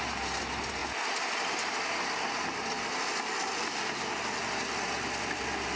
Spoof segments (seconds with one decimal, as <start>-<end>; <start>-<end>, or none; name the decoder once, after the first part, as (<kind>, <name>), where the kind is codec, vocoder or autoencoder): none